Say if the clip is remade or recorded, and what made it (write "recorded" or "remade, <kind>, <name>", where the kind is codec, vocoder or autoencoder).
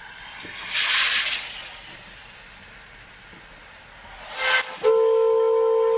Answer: recorded